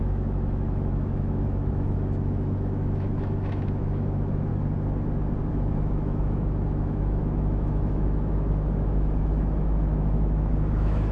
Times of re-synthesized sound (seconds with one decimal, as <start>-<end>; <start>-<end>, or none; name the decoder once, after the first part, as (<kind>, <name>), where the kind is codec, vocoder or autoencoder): 0.0-4.5 (autoencoder, DAC-VAE); 5.5-11.1